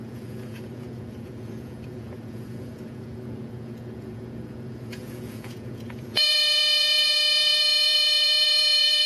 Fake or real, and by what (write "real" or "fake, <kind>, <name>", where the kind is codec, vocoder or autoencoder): fake, vocoder, Vocos